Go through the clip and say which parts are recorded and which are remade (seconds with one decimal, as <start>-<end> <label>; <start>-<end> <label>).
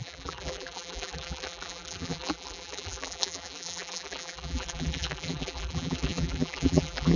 0.0-7.2 remade